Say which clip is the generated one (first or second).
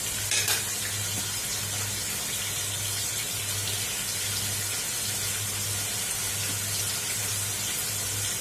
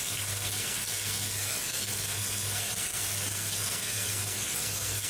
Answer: second